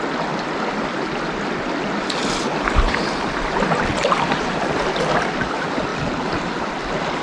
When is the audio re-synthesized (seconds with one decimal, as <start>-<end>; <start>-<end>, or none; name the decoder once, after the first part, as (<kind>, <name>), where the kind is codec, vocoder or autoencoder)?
3.9-4.6 (vocoder, BigVGAN v2)